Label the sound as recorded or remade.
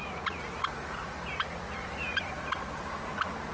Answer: remade